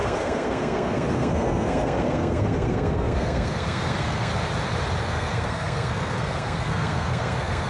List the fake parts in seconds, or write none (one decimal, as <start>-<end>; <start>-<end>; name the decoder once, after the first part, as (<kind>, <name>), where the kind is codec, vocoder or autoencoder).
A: 0.0-4.3 (codec, SNAC); 5.0-7.7